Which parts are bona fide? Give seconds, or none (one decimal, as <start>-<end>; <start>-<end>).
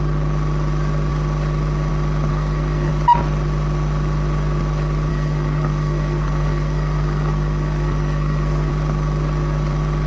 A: 0.0-2.3; 2.9-5.1; 8.7-10.1